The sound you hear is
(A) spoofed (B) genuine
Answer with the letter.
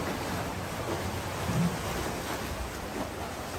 B